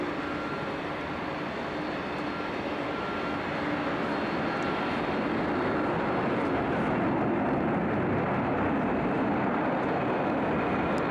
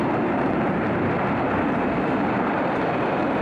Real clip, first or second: first